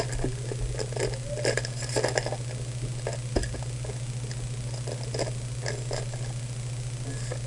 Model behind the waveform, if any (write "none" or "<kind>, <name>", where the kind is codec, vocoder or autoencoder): none